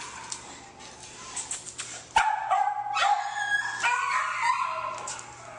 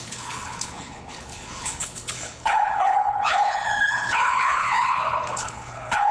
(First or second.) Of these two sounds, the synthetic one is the second